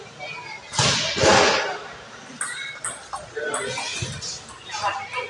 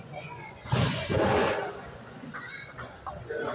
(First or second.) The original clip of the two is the first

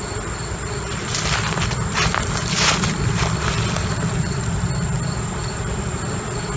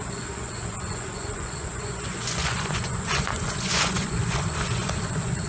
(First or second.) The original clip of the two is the first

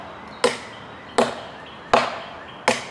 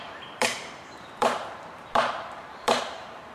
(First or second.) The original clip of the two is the first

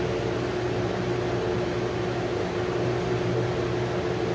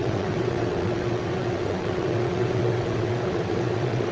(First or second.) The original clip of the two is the first